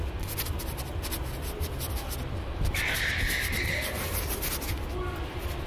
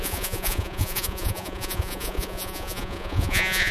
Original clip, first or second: first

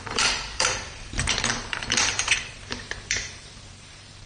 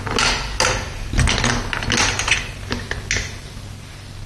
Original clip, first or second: second